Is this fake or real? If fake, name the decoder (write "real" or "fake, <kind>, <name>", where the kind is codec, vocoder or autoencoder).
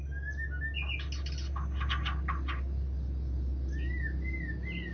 real